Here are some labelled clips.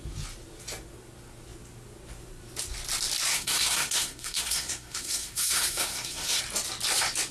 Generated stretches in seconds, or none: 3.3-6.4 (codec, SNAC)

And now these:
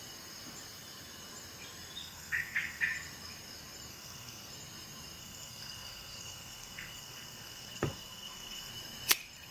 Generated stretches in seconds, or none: 2.0-2.8 (codec, SNAC); 3.9-4.5; 5.2-8.7

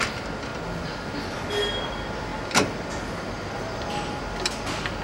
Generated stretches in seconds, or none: none

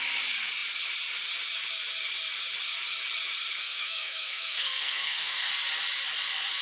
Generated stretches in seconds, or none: 3.6-5.5 (codec, SNAC)

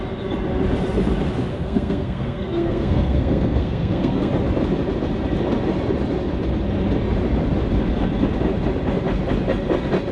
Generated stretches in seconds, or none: 1.5-4.3 (codec, SNAC)

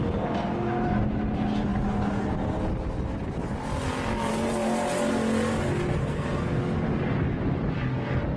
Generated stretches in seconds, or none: 6.0-6.5 (codec, SNAC)

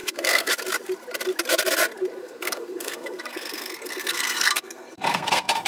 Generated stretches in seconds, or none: 0.0-0.5 (codec, SNAC); 2.2-5.7

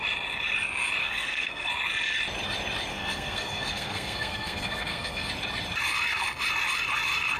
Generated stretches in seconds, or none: 1.0-1.7 (codec, SNAC); 2.9-5.3